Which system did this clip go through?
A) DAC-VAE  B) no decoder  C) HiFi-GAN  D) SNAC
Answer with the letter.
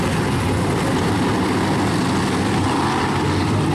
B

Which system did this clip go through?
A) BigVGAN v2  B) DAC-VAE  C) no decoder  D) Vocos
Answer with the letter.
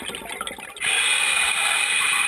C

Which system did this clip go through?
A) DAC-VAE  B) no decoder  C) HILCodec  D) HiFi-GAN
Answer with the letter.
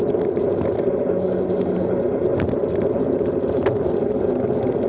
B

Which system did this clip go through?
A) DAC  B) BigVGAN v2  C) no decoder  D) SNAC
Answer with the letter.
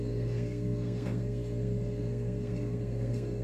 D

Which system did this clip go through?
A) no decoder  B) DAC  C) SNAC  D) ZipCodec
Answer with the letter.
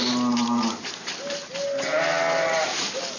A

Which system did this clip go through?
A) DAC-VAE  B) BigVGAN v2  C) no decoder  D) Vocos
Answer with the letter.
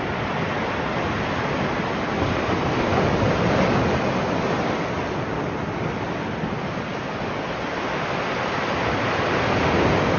C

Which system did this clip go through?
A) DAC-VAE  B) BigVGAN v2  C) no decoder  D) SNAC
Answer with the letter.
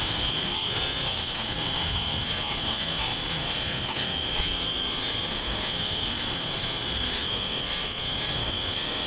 D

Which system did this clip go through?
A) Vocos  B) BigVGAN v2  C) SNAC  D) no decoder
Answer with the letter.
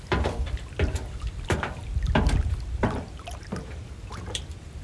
D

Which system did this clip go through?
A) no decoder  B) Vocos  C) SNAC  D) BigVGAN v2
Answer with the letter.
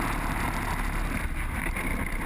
A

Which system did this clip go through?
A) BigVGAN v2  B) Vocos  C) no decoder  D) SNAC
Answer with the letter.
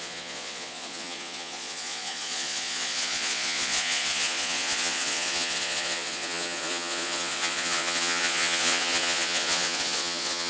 B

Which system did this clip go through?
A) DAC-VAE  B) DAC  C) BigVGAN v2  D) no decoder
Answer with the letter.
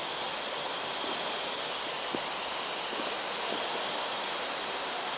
D